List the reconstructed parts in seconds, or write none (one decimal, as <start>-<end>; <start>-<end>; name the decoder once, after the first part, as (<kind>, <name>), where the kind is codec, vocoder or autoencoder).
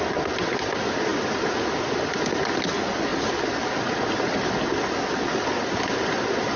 none